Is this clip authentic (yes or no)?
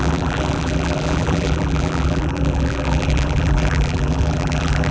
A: no